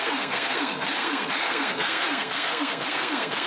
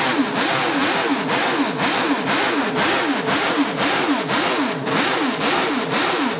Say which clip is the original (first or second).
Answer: second